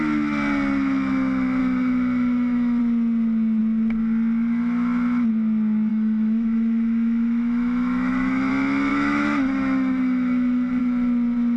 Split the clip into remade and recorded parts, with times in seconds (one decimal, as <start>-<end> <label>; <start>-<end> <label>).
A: 0.0-1.6 recorded; 1.6-2.8 remade; 2.8-5.9 recorded; 5.9-8.5 remade; 8.5-8.9 recorded; 8.9-10.8 remade; 10.8-11.6 recorded